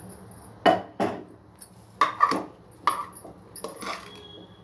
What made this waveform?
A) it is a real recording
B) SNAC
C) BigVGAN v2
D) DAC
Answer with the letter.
A